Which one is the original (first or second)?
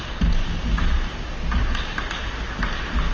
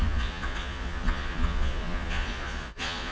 first